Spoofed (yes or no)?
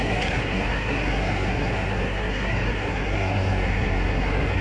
yes